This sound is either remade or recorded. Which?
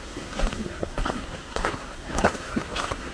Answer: remade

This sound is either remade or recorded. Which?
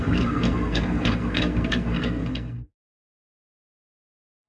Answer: remade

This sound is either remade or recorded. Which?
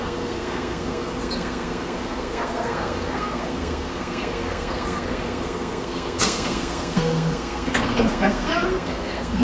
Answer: remade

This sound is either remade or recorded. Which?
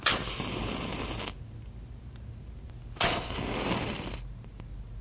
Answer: recorded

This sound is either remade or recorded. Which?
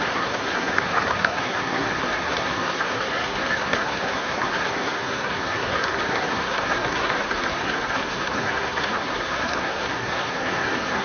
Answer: remade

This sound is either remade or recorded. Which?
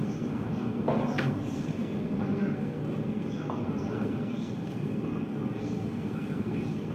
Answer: remade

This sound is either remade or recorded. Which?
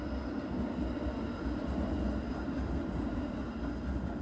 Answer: recorded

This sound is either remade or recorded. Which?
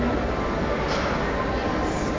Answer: recorded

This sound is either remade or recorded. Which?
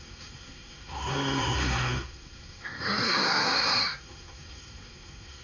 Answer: remade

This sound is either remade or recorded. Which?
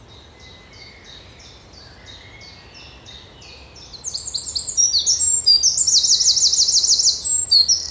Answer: recorded